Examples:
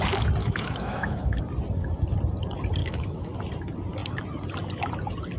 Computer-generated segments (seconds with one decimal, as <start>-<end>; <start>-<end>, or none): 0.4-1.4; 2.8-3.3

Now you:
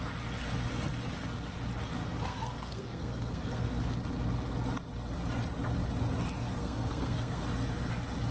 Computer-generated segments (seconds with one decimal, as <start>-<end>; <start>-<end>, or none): 2.0-3.8; 6.6-7.4

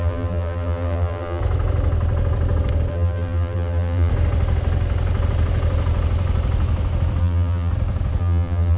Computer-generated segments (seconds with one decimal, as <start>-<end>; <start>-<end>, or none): 0.0-1.4; 2.9-4.1; 7.2-7.7; 8.2-8.8

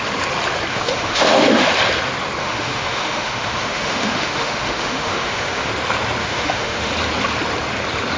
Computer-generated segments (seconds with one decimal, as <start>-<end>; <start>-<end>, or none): 0.7-1.7; 2.4-5.7; 6.2-6.9

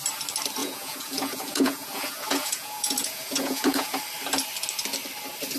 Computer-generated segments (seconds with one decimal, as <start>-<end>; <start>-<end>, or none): 0.6-4.0

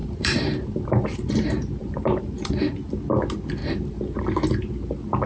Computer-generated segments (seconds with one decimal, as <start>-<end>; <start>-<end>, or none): 0.0-1.3; 1.8-2.5; 3.6-4.2

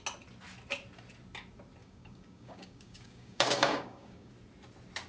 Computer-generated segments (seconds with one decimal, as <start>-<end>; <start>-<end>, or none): 1.8-4.3

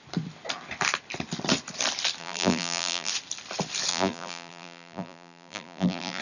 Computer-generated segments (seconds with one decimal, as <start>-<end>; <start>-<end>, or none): 2.2-3.1; 3.9-6.2